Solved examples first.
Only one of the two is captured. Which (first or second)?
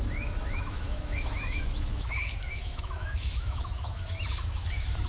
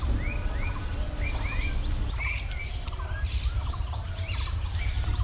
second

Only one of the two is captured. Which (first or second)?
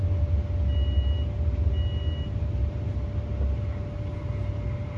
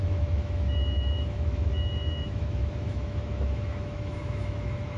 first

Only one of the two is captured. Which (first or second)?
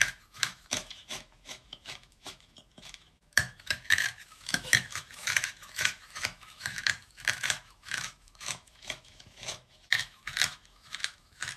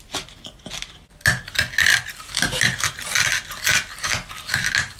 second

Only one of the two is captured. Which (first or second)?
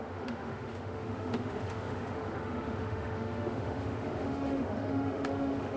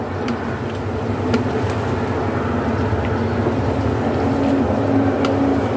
second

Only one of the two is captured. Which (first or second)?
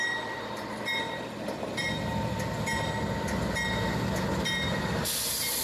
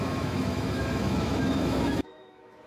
first